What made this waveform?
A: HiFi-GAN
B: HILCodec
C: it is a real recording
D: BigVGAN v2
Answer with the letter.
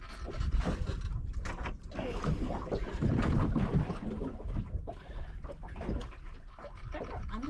C